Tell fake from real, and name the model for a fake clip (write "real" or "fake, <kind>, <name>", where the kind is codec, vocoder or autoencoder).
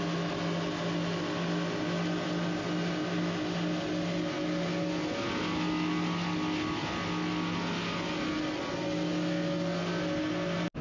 real